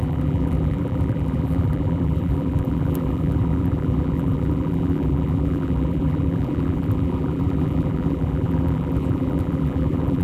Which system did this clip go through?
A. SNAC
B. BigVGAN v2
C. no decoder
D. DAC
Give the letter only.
B